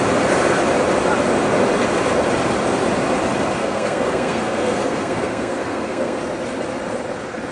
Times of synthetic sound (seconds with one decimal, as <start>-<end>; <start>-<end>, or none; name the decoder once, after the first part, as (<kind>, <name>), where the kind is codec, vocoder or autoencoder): 3.6-6.2 (codec, SNAC)